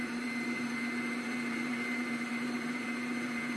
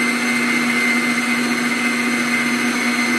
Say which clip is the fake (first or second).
first